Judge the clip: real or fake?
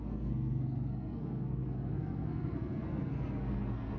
fake